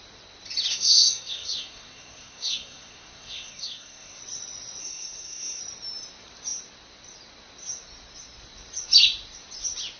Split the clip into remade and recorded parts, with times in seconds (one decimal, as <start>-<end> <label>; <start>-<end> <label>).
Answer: 0.0-0.7 recorded; 0.7-4.2 remade; 4.2-4.8 recorded; 4.8-5.6 remade; 5.6-10.0 recorded